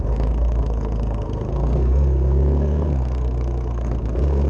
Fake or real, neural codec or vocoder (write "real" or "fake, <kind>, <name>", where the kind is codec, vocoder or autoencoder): fake, codec, SNAC